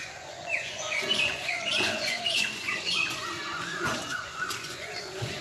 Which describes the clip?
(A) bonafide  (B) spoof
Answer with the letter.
B